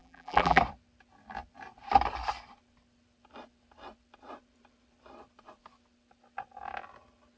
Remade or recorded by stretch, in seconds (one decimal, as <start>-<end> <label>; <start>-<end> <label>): 0.0-0.6 remade; 0.6-7.4 recorded